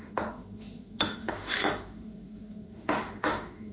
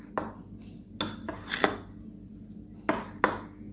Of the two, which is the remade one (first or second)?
first